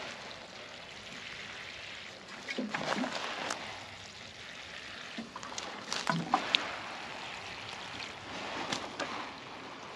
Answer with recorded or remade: recorded